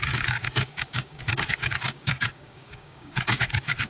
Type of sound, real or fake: fake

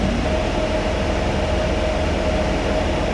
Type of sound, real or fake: real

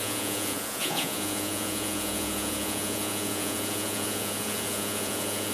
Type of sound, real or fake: fake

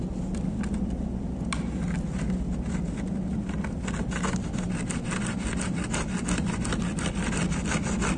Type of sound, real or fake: real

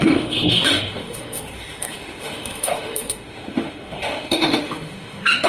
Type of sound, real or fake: fake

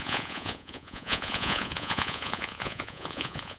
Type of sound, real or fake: fake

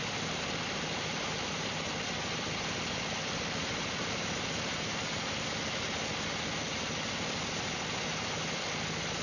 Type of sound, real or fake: real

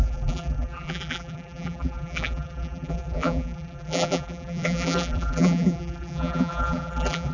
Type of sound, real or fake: fake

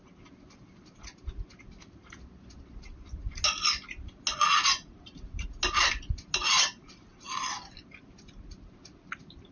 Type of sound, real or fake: real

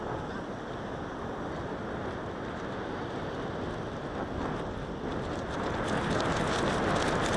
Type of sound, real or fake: real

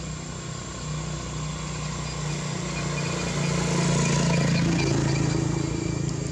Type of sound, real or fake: real